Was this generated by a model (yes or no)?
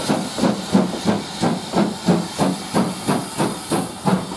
no